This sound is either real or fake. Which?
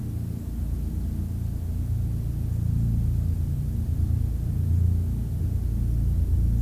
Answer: real